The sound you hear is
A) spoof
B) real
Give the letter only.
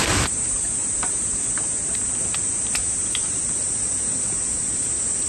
A